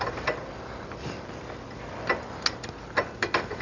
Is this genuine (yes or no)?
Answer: yes